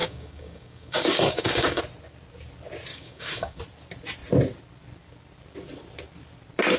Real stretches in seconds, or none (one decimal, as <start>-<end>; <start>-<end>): 1.8-2.9; 3.6-6.8